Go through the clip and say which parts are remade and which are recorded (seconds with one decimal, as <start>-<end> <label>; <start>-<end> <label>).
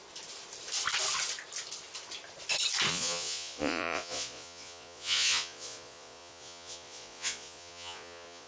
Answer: 0.0-2.9 recorded; 2.9-8.5 remade